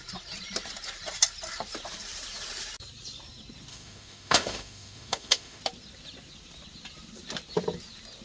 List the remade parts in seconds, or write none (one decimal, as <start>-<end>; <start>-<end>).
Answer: 3.7-5.6